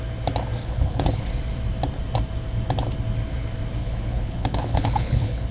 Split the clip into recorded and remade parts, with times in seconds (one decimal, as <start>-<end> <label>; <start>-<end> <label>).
0.0-0.6 recorded; 0.6-1.3 remade; 1.3-3.8 recorded; 3.8-5.5 remade